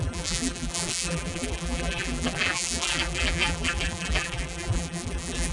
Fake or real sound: fake